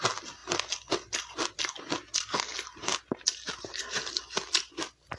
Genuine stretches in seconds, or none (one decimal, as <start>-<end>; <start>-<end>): 0.0-5.2